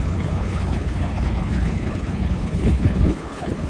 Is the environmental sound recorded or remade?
remade